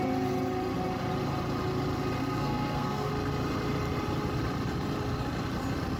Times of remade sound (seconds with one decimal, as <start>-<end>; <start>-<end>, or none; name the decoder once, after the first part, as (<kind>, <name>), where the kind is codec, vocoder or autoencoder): 2.2-3.1 (codec, SNAC)